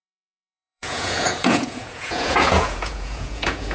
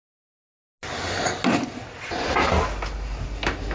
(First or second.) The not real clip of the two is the first